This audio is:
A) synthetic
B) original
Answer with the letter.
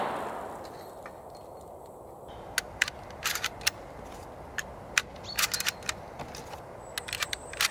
B